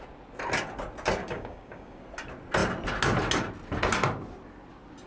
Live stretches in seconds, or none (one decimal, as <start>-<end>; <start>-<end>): 0.0-1.2; 2.0-5.1